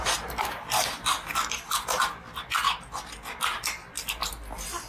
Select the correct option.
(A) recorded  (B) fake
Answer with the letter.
A